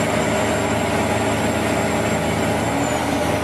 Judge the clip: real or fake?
real